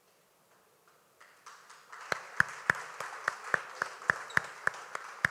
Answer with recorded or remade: recorded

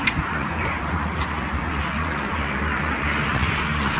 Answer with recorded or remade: remade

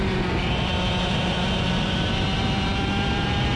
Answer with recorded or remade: recorded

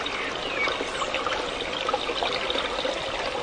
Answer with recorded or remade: recorded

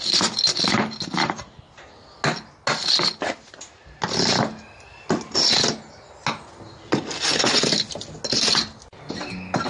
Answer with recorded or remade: recorded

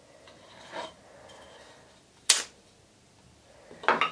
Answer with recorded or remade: recorded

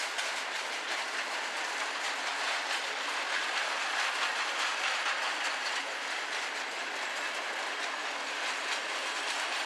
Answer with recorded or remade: recorded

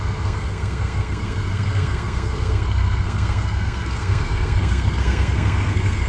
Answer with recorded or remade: remade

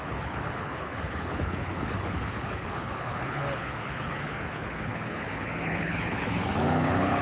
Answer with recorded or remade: remade